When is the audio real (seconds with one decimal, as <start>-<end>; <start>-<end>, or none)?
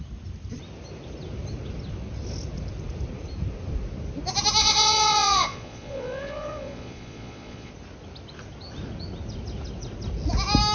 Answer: 0.0-4.6; 7.7-10.7